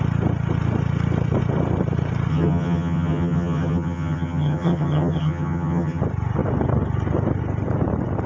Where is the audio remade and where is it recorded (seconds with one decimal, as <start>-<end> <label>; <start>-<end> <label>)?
0.0-2.3 recorded; 2.3-6.0 remade; 6.0-8.3 recorded